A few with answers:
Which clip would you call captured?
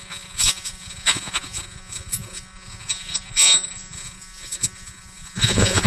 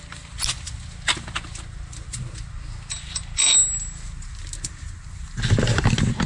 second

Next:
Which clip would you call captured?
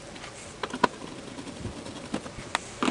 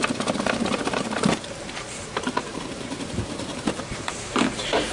first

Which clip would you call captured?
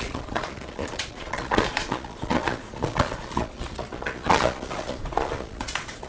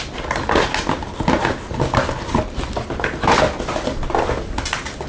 second